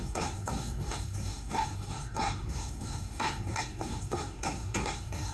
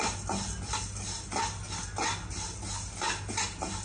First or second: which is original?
second